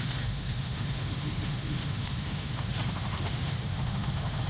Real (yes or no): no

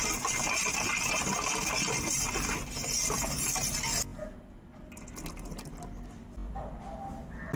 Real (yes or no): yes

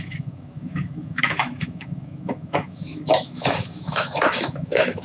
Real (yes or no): no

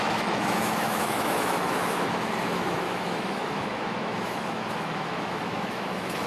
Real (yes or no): no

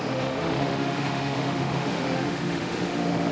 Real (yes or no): no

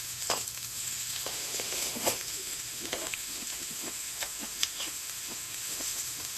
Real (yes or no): no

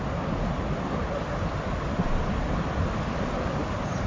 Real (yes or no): yes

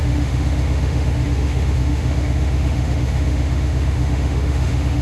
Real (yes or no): no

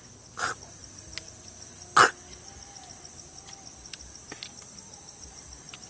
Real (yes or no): yes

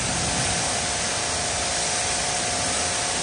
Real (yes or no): yes